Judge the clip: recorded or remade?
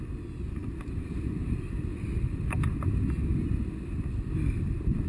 recorded